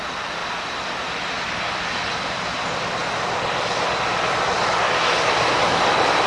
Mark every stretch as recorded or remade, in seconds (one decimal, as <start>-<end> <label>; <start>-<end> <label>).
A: 0.0-6.3 recorded